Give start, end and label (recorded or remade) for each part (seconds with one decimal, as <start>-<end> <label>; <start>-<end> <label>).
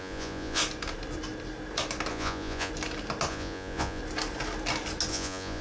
0.0-0.6 remade; 0.6-2.1 recorded; 2.1-2.7 remade; 2.7-3.3 recorded; 3.3-4.0 remade; 4.0-5.1 recorded; 5.1-5.6 remade